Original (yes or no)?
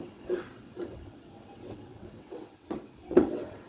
no